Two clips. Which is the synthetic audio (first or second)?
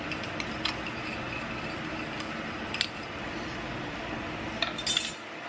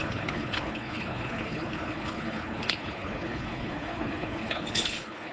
second